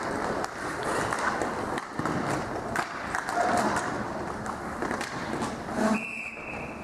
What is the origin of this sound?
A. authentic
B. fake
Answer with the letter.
B